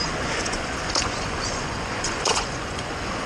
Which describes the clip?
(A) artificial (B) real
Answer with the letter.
A